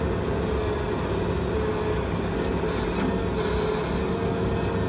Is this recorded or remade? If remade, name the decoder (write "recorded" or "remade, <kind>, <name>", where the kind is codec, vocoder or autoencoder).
recorded